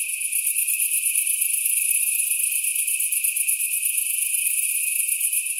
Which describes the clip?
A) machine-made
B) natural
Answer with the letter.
B